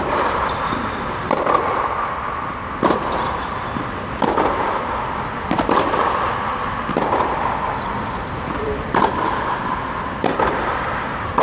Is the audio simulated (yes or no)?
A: no